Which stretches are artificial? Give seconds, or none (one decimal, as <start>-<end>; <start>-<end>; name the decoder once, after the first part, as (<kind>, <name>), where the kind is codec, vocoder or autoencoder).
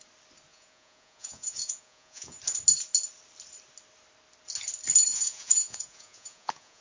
0.5-2.4 (vocoder, Vocos); 5.1-6.8